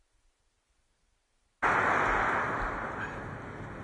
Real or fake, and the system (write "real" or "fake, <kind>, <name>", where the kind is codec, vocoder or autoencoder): real